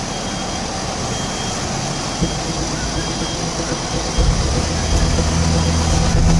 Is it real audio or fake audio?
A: real